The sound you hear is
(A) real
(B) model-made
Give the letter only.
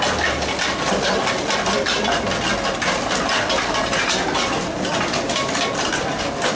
A